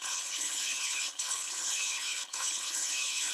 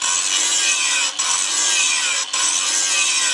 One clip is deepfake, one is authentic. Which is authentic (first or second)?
second